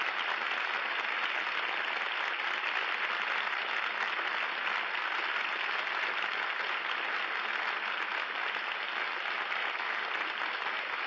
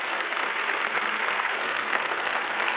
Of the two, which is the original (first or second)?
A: first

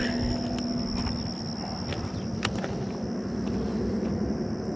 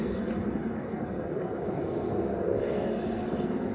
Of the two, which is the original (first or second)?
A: first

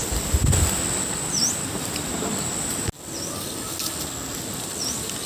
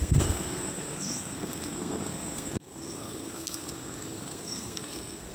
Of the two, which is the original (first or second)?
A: first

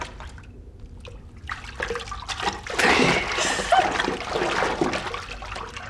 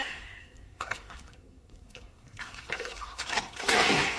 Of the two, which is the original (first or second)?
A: first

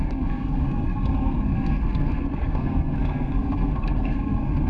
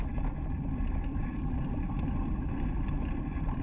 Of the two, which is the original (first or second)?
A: second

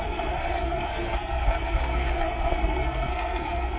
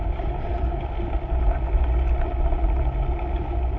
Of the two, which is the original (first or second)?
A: second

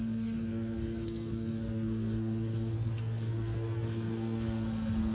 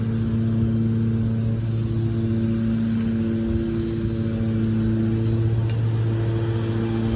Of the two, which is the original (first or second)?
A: second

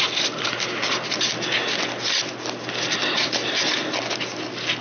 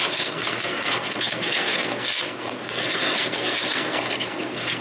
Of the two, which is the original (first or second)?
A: first